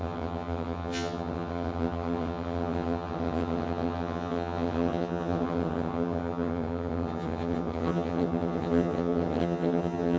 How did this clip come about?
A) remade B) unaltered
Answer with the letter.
A